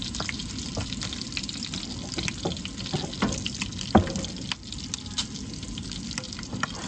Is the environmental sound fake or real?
real